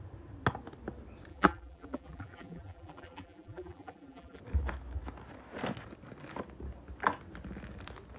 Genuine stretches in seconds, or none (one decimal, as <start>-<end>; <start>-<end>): 0.0-1.3; 4.4-8.2